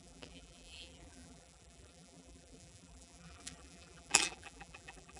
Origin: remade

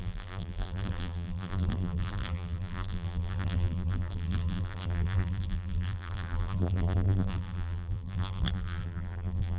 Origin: remade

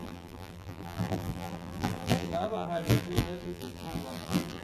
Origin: remade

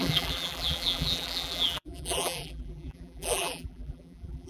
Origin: remade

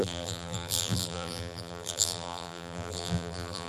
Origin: remade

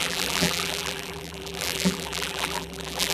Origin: remade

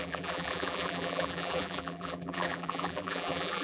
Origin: remade